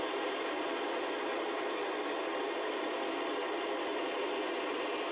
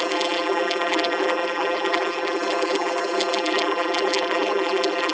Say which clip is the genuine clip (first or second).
first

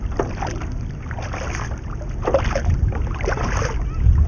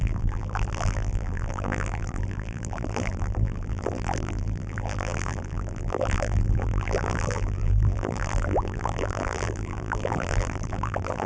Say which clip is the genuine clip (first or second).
first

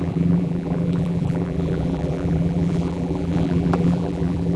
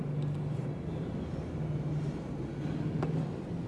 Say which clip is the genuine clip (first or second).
second